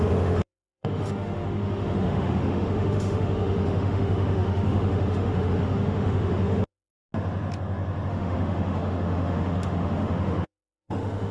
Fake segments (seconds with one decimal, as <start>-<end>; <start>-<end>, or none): 0.0-6.9; 8.1-11.3